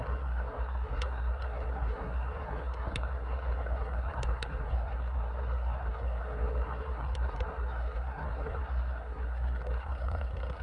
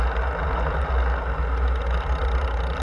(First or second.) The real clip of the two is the second